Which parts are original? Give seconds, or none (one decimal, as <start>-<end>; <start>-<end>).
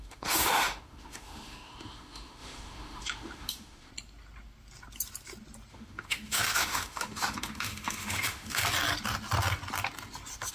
3.9-5.7; 8.6-10.5